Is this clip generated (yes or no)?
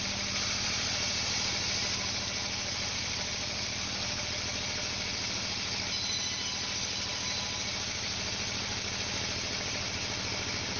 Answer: no